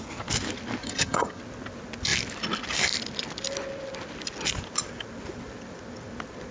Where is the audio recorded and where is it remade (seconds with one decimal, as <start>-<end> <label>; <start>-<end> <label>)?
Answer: 0.0-0.8 recorded; 0.8-1.4 remade; 1.4-6.5 recorded

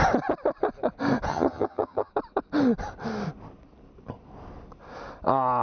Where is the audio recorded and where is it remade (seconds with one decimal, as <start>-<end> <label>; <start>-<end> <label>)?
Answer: 0.0-1.3 recorded; 1.3-2.1 remade; 2.1-5.6 recorded

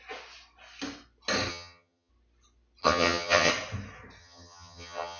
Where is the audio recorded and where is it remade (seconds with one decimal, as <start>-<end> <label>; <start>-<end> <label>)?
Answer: 0.0-1.5 recorded; 1.5-2.1 remade; 2.1-2.8 recorded; 2.8-3.5 remade; 3.5-4.2 recorded; 4.2-5.2 remade

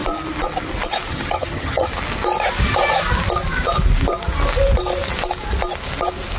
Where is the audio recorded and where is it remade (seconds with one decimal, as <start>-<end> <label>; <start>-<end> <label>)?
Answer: 0.0-1.1 recorded; 1.1-1.9 remade; 1.9-6.4 recorded

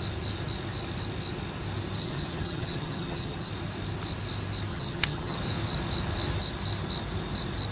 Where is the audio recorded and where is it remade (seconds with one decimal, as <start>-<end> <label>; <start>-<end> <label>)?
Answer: 0.0-2.0 recorded; 2.0-3.5 remade; 3.5-4.7 recorded; 4.7-5.4 remade; 5.4-7.7 recorded

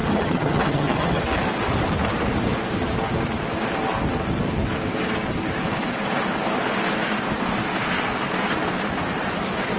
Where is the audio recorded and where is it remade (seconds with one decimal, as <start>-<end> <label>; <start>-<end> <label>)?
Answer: 0.0-1.2 remade; 1.2-9.8 recorded